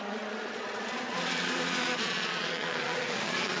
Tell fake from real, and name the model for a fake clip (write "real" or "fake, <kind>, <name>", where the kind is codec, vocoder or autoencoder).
fake, vocoder, Vocos